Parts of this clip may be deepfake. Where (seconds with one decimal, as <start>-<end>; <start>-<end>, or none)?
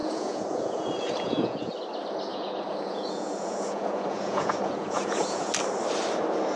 0.0-1.7; 2.3-5.5